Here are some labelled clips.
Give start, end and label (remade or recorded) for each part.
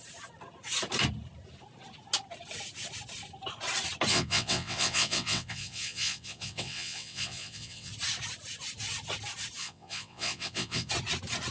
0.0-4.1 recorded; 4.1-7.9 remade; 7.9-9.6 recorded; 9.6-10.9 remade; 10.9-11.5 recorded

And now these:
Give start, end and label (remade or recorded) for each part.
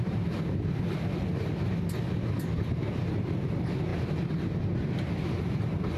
0.0-6.0 recorded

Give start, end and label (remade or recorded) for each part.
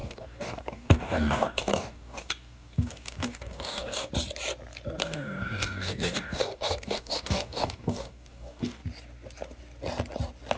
0.0-4.1 remade; 4.1-5.0 recorded; 5.0-8.8 remade; 8.8-10.6 recorded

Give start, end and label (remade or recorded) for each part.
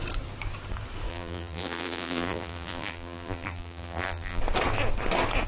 0.0-1.1 recorded; 1.1-4.4 remade; 4.4-5.5 recorded